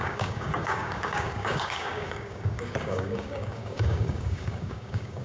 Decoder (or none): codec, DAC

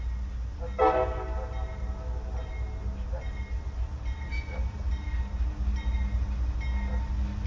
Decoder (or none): none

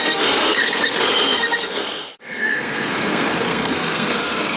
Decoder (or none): codec, SNAC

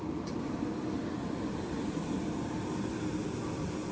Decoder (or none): none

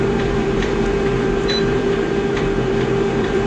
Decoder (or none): vocoder, BigVGAN v2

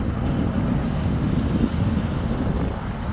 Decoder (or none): none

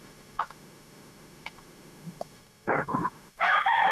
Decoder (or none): autoencoder, DAC-VAE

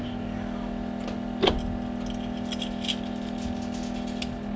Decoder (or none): none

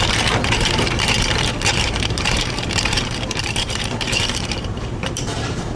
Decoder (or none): vocoder, BigVGAN v2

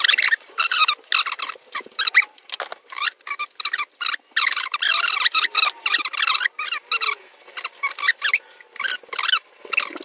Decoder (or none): none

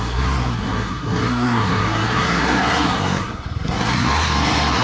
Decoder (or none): codec, SNAC